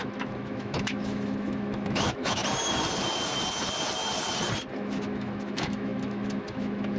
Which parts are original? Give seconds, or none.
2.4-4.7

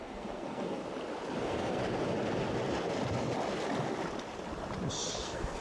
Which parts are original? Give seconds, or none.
0.8-1.4; 1.8-5.1

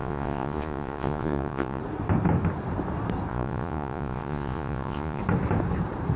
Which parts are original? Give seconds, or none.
1.8-3.3; 5.2-6.2

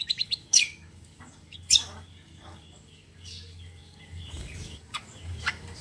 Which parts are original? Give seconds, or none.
none